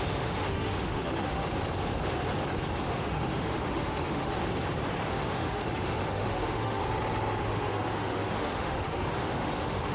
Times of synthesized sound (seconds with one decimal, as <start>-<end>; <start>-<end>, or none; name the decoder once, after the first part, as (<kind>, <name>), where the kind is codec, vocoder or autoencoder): 0.0-1.4 (autoencoder, DAC-VAE); 2.8-4.4; 5.1-6.8; 7.4-9.9